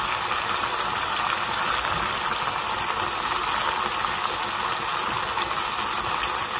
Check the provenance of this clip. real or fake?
real